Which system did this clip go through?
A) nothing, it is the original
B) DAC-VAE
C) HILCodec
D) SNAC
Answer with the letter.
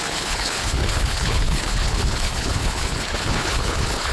C